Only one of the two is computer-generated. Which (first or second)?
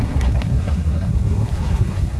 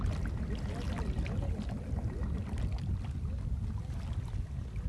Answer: first